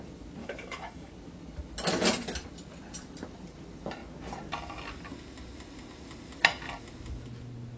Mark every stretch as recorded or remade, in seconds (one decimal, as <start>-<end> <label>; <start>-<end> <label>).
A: 0.0-0.4 recorded; 0.4-1.1 remade; 1.1-7.8 recorded